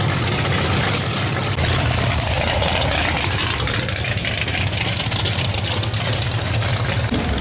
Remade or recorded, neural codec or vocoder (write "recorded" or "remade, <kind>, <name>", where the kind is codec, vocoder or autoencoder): remade, vocoder, BigVGAN v2